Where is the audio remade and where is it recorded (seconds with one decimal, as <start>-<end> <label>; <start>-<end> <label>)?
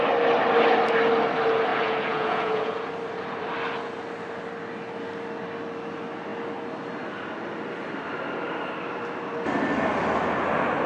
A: 0.0-1.7 recorded; 1.7-2.9 remade; 2.9-10.9 recorded